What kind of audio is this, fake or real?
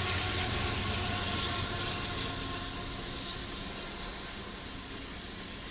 real